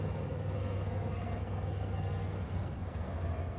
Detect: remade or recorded remade